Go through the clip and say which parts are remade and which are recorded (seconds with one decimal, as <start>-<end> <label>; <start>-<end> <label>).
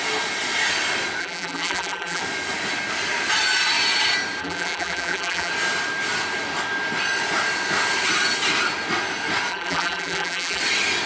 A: 0.0-1.2 recorded; 1.2-2.2 remade; 2.2-4.4 recorded; 4.4-5.5 remade; 5.5-9.5 recorded; 9.5-10.6 remade; 10.6-11.1 recorded